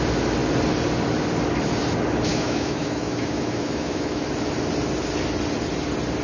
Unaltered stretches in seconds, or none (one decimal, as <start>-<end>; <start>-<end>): 0.0-2.3; 4.2-6.2